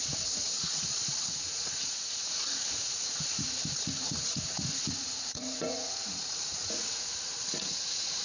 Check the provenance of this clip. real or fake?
fake